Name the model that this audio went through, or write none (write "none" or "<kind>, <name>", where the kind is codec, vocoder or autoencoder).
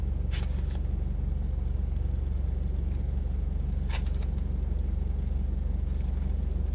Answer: none